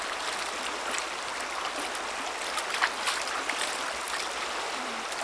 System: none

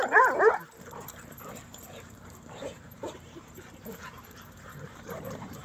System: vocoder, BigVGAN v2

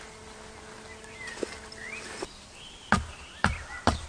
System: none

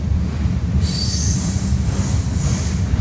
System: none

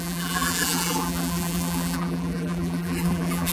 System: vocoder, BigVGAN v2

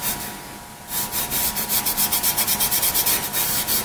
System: vocoder, BigVGAN v2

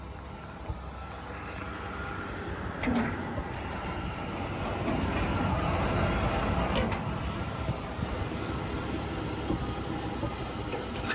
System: none